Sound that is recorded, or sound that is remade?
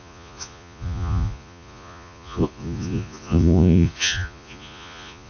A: remade